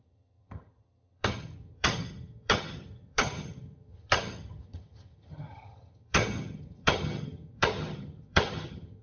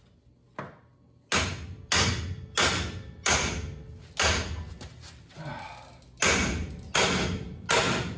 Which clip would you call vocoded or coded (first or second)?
first